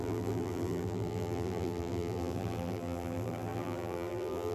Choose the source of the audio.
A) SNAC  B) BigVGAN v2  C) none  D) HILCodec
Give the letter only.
B